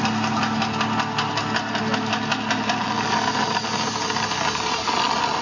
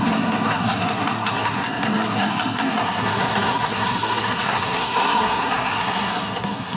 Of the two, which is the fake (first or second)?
second